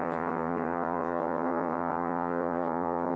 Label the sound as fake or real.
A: fake